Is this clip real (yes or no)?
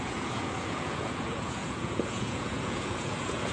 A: no